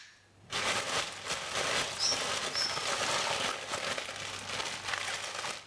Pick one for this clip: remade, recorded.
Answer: recorded